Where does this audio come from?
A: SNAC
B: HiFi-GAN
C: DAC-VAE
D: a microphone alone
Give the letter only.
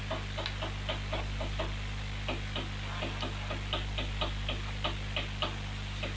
D